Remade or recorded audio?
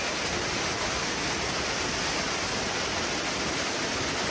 recorded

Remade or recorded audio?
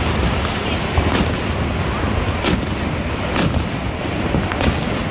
recorded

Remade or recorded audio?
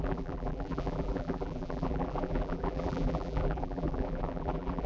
remade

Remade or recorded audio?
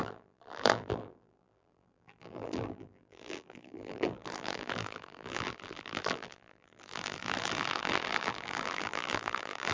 remade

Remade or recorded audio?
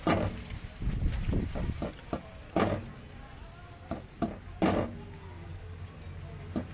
recorded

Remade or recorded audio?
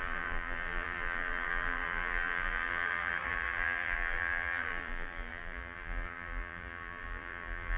remade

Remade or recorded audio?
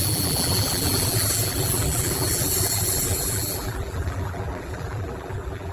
remade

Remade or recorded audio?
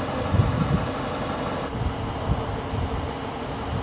remade